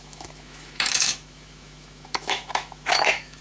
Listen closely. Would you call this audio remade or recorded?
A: remade